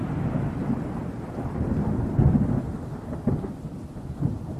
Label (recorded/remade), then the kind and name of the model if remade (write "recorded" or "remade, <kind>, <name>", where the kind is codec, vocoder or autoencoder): recorded